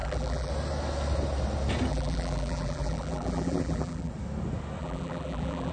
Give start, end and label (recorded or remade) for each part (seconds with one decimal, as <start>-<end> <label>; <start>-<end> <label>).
0.0-0.5 remade; 0.5-1.9 recorded; 1.9-4.1 remade; 4.1-4.8 recorded; 4.8-5.7 remade